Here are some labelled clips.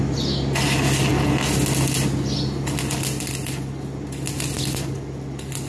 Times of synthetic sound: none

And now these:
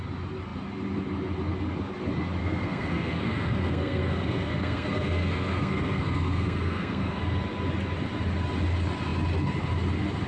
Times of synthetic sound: 2.4-7.2